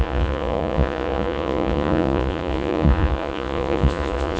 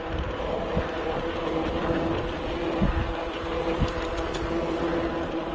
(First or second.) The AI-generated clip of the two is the first